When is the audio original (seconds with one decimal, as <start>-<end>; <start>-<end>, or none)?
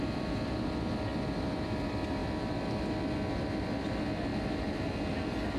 0.0-5.6